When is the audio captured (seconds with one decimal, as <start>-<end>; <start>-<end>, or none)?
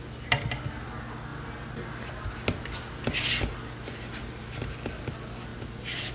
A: 0.0-5.5